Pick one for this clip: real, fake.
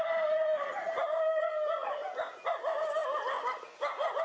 real